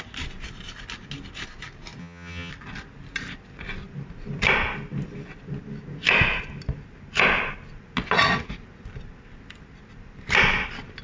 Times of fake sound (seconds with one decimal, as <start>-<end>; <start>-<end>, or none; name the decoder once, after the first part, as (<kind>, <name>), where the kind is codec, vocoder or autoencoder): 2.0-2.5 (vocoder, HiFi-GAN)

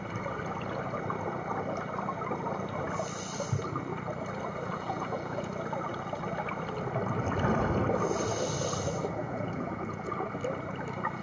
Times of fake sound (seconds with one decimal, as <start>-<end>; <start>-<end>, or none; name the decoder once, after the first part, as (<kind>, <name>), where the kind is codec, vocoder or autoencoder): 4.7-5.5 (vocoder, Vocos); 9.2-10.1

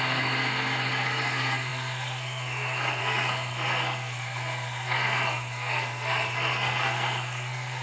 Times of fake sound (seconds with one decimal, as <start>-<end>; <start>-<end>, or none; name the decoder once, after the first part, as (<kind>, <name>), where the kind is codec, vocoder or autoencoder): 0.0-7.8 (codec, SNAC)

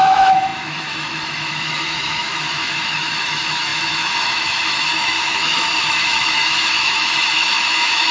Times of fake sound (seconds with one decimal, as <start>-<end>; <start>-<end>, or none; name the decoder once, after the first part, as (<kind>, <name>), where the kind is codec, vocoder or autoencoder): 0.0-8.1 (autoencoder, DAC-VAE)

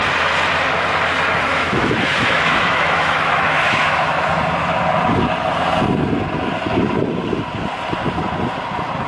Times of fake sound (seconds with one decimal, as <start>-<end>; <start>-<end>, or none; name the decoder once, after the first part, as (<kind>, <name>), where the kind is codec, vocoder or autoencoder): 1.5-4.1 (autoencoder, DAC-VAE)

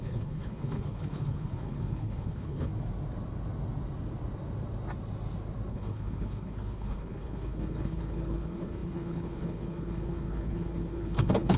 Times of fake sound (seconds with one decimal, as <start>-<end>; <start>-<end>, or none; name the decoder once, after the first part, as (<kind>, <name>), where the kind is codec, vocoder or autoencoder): 0.0-2.7 (codec, HILCodec); 5.7-11.6

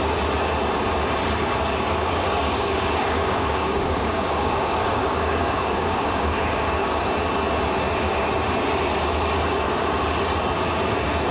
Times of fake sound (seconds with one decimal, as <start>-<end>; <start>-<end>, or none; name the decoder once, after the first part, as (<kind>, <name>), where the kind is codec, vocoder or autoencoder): 2.0-7.0 (codec, DAC)

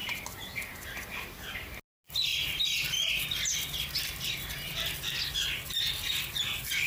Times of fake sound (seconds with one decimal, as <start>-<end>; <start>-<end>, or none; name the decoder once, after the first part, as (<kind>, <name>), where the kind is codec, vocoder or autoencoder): 2.3-3.1 (vocoder, BigVGAN v2)